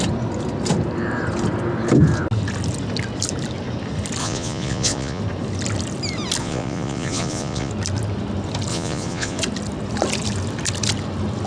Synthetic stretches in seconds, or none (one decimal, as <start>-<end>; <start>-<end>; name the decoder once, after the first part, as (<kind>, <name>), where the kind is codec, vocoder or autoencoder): 4.2-5.2 (vocoder, Vocos); 6.4-7.7; 8.7-9.4

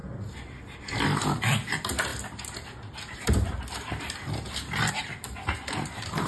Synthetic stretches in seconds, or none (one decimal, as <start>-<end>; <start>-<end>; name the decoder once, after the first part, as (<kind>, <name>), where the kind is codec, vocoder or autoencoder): none

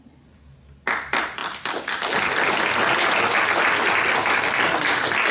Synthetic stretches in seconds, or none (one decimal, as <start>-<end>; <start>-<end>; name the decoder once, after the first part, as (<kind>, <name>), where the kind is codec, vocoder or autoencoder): none

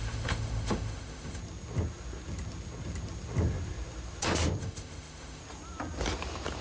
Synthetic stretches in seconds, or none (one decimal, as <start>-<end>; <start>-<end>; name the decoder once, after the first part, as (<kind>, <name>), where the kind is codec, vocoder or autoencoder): 0.0-1.4 (autoencoder, DAC-VAE); 4.6-5.4

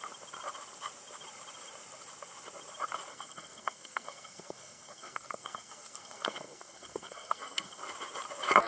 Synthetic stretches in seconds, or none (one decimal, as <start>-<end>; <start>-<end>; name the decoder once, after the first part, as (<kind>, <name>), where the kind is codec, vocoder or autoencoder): 3.1-7.8 (codec, SNAC)

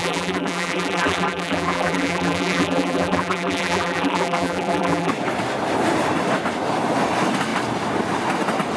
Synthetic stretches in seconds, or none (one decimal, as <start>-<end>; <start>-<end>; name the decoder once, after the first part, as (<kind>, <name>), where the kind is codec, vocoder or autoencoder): 0.0-5.1 (vocoder, BigVGAN v2)

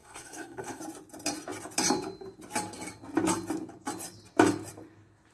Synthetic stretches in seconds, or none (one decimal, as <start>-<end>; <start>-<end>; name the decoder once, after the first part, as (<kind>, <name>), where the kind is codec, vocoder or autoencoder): 0.0-0.8 (codec, SNAC)

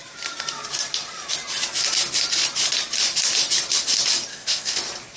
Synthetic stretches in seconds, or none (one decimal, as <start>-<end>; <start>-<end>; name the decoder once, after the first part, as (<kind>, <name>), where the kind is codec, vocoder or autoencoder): 4.3-4.8 (codec, ZipCodec)